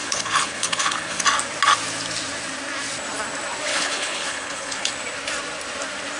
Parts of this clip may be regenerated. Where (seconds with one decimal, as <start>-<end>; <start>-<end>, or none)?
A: 0.0-1.2; 3.7-4.9